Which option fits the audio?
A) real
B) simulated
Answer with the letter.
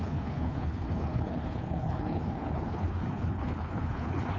B